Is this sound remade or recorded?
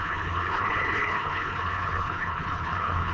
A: remade